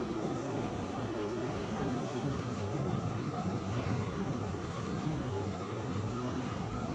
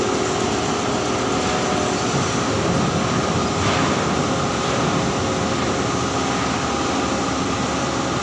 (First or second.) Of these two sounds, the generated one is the first